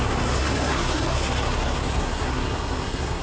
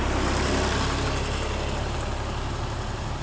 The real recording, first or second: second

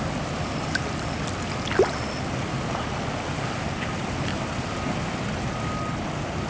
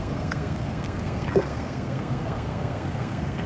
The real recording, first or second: first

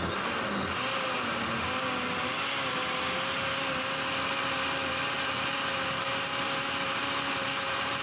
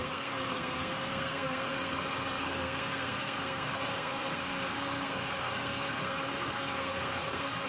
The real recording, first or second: first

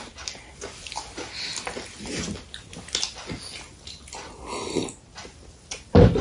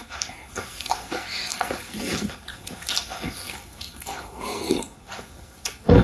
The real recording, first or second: first